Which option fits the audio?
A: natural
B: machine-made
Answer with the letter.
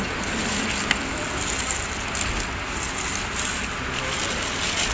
A